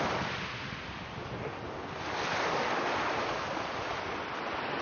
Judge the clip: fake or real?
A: real